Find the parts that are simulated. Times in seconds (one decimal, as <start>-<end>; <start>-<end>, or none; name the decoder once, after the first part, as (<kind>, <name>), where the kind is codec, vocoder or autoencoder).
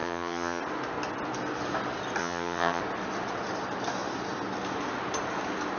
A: 0.0-0.6 (vocoder, HiFi-GAN); 2.2-2.8